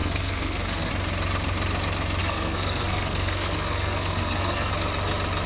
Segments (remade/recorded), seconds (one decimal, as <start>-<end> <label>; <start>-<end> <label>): 0.0-0.9 remade; 0.9-2.2 recorded; 2.2-4.7 remade; 4.7-5.5 recorded

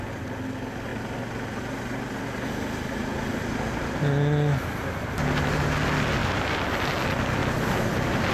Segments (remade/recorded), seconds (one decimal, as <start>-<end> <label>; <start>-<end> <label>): 0.0-8.3 recorded